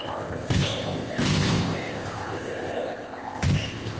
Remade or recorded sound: remade